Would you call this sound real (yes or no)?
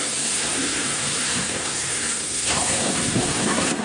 no